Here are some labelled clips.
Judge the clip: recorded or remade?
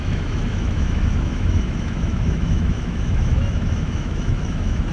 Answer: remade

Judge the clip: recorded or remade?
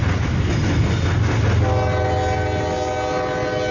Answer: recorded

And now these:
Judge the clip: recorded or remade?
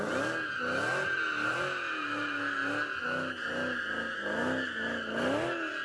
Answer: recorded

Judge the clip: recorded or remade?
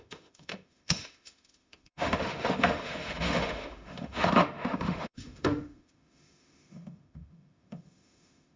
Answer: remade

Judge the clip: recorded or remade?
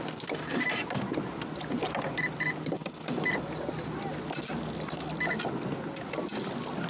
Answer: recorded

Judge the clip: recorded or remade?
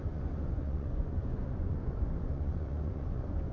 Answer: remade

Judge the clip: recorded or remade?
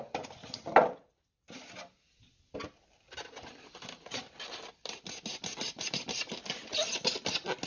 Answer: recorded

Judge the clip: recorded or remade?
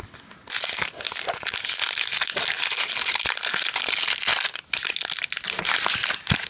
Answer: recorded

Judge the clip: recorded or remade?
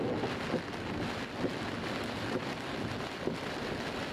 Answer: recorded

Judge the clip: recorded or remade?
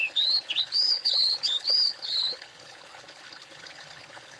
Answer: remade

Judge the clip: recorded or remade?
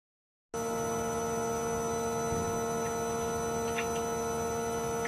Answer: recorded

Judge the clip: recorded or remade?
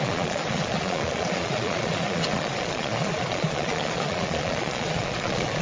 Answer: remade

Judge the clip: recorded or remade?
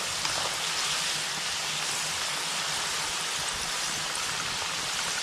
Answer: recorded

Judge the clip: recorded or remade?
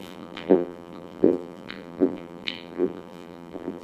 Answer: remade